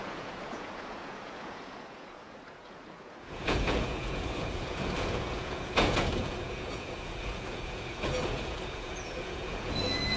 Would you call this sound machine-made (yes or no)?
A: yes